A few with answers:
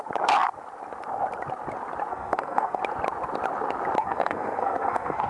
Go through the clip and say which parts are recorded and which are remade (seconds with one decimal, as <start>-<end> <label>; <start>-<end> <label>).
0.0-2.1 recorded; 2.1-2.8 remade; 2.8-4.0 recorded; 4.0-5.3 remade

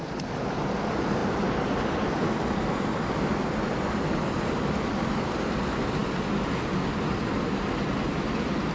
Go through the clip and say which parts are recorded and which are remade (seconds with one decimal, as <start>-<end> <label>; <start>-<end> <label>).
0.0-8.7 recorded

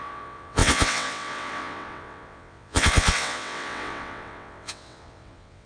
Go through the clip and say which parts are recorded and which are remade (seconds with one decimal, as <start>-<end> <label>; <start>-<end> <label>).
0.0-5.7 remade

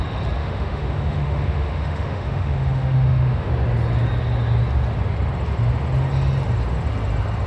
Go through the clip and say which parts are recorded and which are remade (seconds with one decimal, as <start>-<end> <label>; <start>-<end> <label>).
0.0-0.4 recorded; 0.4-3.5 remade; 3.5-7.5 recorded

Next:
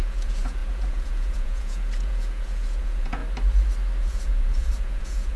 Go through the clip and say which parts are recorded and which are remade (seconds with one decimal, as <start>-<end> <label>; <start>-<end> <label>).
0.0-3.2 remade; 3.2-4.0 recorded; 4.0-5.4 remade

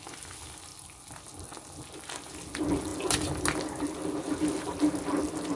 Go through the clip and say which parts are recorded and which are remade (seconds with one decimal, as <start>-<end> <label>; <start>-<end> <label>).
0.0-5.6 recorded